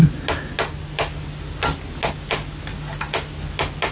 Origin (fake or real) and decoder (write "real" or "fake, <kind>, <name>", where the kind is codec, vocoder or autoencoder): real